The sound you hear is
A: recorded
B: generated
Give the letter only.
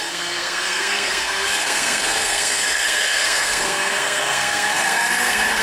B